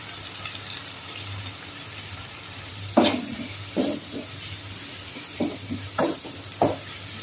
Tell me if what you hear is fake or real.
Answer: fake